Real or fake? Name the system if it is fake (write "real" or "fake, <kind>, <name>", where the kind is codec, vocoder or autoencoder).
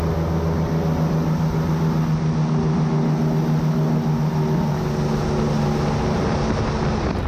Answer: real